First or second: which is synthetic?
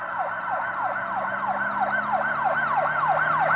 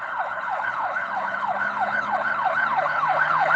second